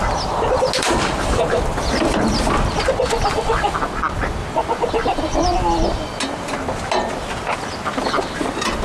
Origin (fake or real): real